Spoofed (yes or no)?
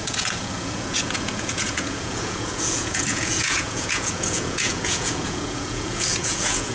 yes